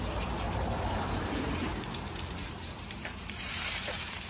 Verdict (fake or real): fake